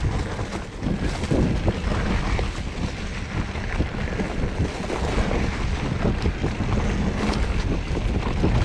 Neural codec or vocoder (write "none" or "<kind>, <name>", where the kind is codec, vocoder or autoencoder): none